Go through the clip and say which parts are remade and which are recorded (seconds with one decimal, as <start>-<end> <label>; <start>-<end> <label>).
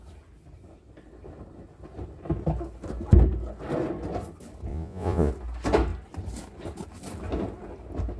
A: 0.0-4.7 recorded; 4.7-5.3 remade; 5.3-8.2 recorded